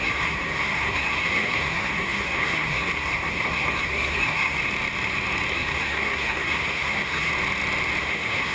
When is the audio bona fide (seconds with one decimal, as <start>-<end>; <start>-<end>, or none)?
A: 4.6-5.5; 7.3-8.0